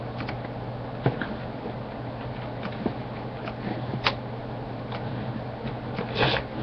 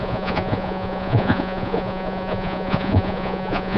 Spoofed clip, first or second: second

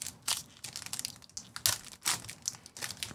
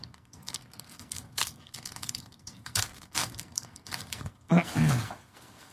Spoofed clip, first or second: second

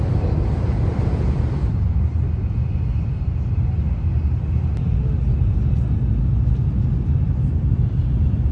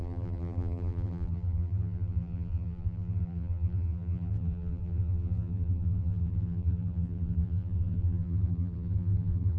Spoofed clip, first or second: second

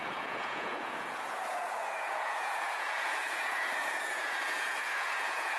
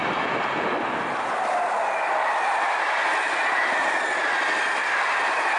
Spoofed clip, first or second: first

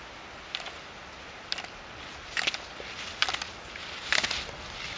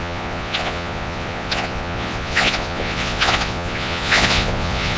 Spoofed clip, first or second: second